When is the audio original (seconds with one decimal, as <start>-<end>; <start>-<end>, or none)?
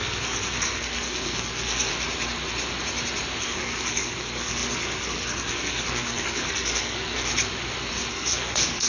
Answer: 1.9-3.4; 7.3-8.1